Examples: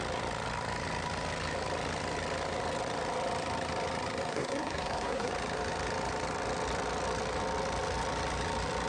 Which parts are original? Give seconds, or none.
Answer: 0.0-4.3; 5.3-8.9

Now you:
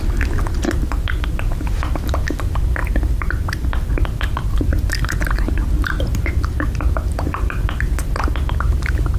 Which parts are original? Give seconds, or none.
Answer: 0.0-9.2

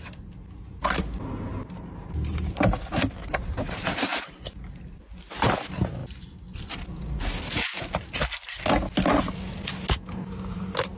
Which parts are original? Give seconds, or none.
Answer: 0.0-1.5; 2.8-11.0

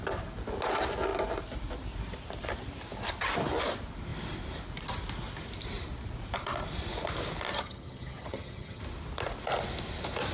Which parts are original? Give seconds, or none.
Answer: 0.0-7.5; 8.8-10.3

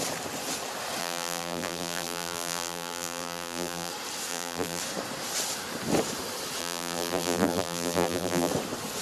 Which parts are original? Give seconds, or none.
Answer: 0.0-1.0; 3.9-4.3; 4.8-6.6; 8.5-9.0

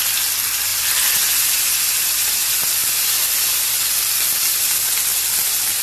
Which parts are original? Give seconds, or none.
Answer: 0.0-2.8; 3.8-5.8

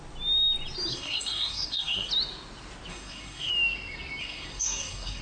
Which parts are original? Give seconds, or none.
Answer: 0.0-0.9; 2.1-2.9; 3.5-4.2